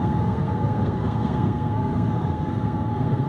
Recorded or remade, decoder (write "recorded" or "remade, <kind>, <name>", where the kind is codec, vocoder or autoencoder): remade, codec, SNAC